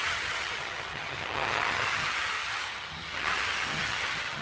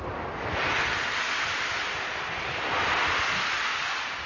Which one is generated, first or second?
first